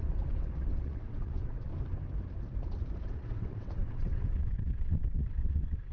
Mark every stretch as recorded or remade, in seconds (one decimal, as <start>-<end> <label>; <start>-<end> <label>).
0.0-1.7 remade; 1.7-3.0 recorded; 3.0-5.9 remade